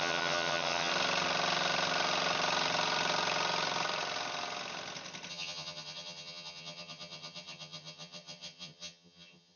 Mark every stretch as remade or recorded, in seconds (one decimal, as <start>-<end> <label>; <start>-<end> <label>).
0.0-0.9 remade; 0.9-5.3 recorded; 5.3-9.6 remade